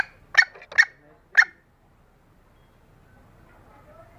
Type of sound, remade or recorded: recorded